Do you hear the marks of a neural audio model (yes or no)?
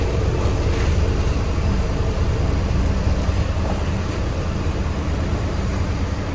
yes